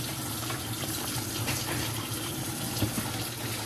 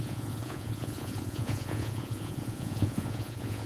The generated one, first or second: second